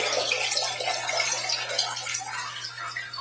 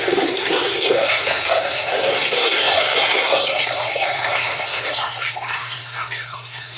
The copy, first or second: second